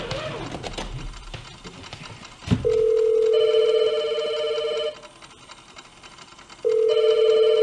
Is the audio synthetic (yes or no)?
no